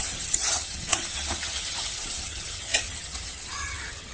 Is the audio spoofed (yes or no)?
yes